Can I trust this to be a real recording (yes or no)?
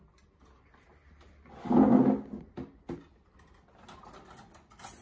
yes